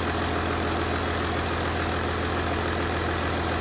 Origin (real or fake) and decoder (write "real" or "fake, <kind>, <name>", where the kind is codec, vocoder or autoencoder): real